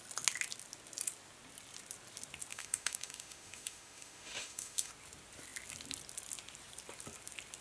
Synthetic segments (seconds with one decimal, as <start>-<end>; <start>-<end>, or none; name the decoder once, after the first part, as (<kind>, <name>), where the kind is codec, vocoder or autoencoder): 2.5-4.9 (autoencoder, DAC-VAE)